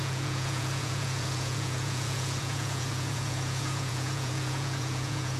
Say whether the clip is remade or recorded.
remade